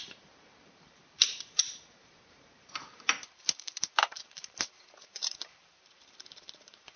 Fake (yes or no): yes